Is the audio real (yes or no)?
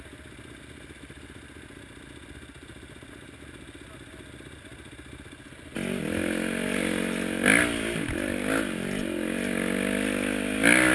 yes